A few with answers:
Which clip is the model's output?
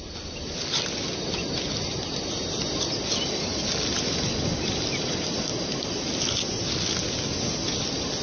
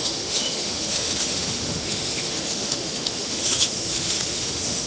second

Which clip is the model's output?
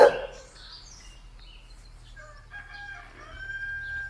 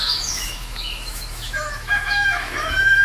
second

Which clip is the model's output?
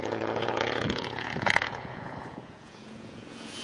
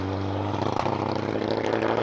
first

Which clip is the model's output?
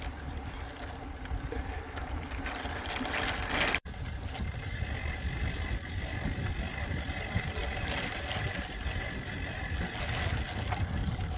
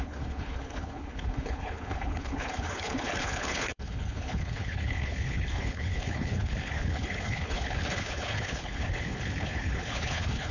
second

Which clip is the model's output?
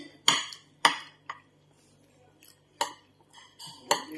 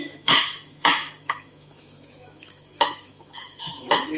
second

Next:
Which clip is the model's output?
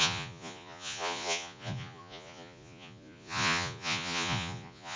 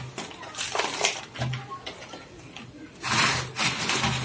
first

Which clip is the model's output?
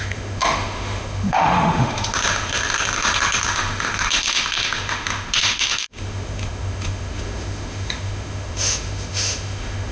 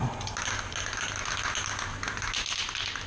first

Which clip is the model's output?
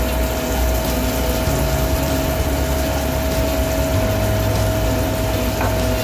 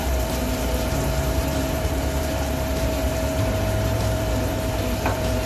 second